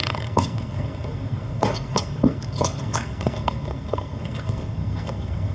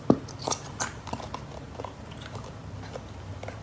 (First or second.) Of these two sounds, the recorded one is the second